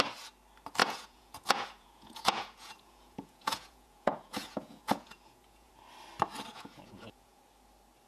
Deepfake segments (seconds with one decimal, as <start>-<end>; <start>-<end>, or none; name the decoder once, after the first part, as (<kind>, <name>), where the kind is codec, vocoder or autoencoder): 0.8-5.7 (vocoder, Vocos); 6.5-7.4

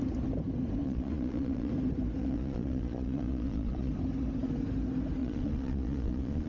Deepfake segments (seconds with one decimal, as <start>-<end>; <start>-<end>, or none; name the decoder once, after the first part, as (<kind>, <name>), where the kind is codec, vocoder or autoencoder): 0.8-1.7 (vocoder, Vocos); 2.2-3.9; 5.2-6.5

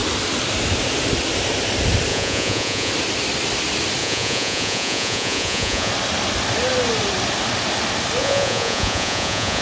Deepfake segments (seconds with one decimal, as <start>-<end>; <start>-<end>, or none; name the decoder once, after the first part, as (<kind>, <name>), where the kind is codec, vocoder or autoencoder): 2.1-2.9 (vocoder, Vocos); 4.0-5.9; 8.2-9.6

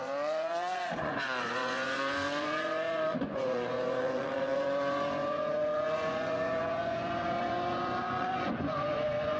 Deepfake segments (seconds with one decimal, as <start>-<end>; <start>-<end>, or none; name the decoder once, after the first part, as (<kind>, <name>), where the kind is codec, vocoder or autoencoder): 0.0-9.4 (vocoder, Vocos)

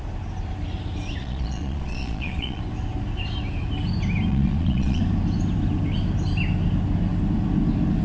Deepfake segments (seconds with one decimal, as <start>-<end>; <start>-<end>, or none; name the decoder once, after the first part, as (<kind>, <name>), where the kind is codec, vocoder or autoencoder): 1.2-2.6 (vocoder, Vocos); 4.3-5.0

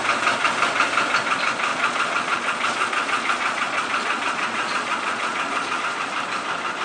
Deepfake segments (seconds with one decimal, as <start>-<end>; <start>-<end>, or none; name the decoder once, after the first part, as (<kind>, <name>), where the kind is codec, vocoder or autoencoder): 1.7-5.8 (vocoder, Vocos)

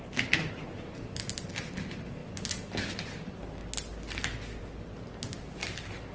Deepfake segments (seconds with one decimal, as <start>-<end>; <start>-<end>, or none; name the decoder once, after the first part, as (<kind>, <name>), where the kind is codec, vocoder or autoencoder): none